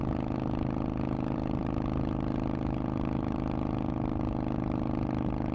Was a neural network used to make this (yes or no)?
no